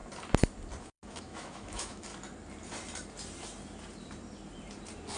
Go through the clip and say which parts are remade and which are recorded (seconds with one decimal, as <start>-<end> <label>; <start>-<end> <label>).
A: 0.0-0.8 recorded; 0.8-2.1 remade; 2.1-5.2 recorded